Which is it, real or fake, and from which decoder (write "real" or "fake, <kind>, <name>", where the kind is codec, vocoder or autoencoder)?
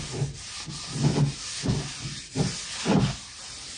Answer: real